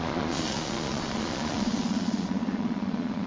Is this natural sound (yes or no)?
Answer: no